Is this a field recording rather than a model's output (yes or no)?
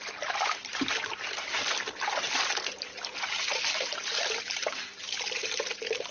yes